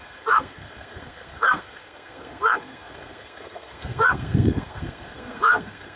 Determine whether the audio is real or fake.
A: fake